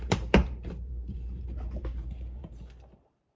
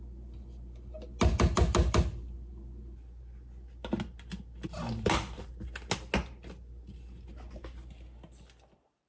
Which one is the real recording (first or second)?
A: second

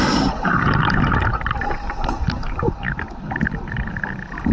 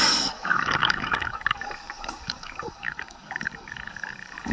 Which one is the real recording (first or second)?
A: first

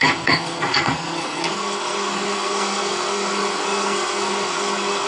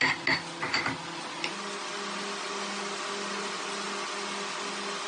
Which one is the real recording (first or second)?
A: second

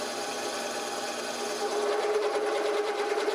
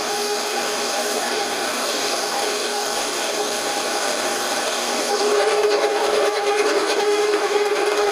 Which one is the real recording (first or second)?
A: first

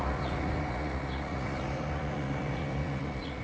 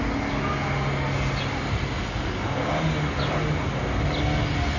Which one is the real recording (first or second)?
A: second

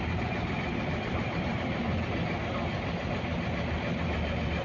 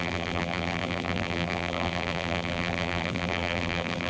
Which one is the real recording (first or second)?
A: first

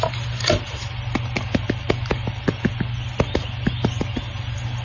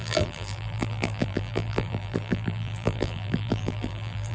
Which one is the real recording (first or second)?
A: first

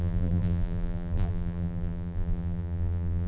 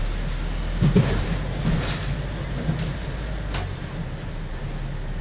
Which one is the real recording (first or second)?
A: second